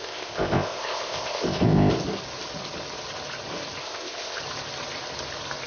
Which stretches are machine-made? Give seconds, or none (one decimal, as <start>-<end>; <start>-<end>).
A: 0.0-1.9; 3.8-4.4